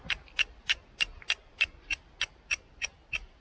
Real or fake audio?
real